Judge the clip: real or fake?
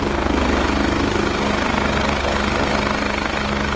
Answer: real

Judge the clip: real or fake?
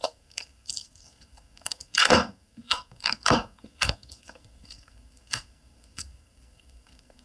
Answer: fake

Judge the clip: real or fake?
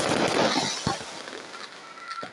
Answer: real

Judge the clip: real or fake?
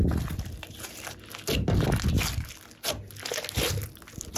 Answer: real